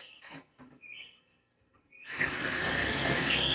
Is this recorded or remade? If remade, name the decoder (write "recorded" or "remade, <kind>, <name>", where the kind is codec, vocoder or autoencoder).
remade, codec, SNAC